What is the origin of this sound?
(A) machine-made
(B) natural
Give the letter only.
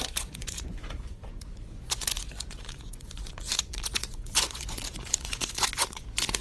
A